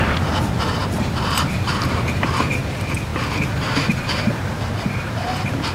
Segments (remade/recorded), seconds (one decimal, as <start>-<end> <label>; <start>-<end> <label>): 0.0-5.7 remade